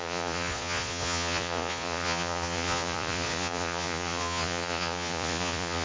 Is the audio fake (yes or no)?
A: yes